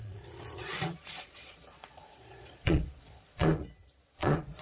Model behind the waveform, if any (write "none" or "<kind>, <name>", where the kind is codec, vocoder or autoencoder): vocoder, Vocos